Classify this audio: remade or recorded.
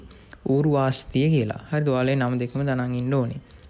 recorded